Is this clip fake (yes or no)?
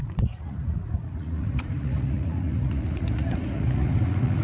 yes